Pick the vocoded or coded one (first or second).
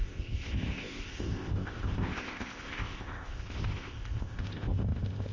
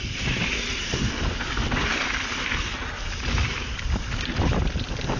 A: first